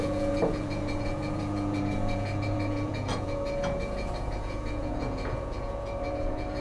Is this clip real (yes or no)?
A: no